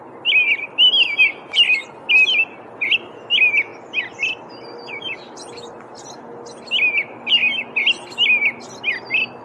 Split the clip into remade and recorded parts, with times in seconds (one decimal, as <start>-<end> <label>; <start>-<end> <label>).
0.0-9.4 recorded